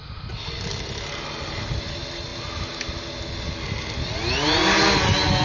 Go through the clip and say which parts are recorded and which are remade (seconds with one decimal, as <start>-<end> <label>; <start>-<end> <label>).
0.0-5.4 recorded